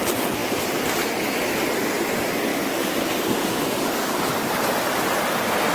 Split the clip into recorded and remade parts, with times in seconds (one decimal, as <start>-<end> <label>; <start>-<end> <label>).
0.0-2.5 recorded; 2.5-4.2 remade; 4.2-5.7 recorded